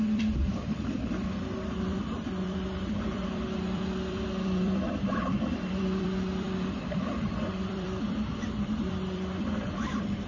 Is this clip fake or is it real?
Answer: fake